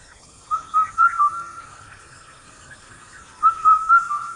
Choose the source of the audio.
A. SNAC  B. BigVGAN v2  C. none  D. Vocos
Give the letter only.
A